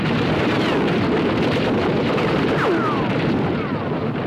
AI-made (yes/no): yes